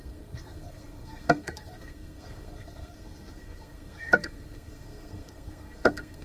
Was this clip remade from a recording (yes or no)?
yes